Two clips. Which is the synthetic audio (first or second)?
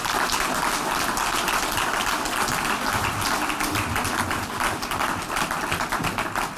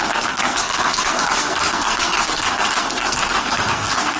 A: second